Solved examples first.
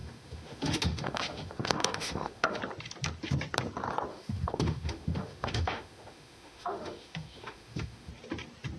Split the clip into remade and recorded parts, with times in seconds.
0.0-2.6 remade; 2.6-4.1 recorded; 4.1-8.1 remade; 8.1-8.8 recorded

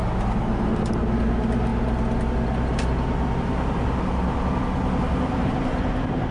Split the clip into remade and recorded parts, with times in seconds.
0.0-6.3 recorded

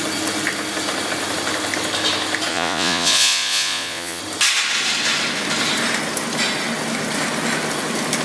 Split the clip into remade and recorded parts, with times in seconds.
0.0-2.5 recorded; 2.5-4.2 remade; 4.2-8.2 recorded

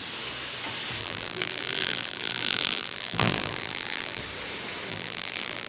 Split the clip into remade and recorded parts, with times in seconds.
0.0-1.0 recorded; 1.0-4.2 remade; 4.2-4.9 recorded; 4.9-5.7 remade